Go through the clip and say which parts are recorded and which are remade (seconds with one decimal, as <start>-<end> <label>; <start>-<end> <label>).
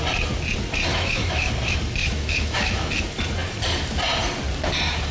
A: 0.0-0.9 recorded; 0.9-1.5 remade; 1.5-2.0 recorded; 2.0-2.9 remade; 2.9-5.1 recorded